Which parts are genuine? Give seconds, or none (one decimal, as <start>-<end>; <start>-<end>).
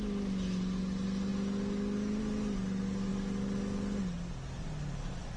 0.0-5.4